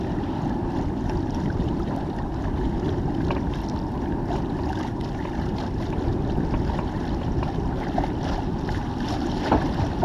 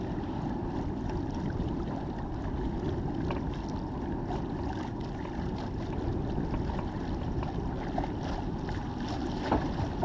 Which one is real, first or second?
second